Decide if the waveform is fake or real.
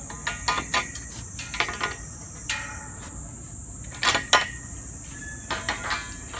real